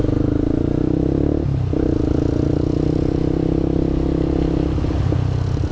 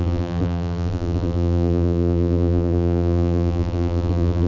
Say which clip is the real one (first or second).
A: first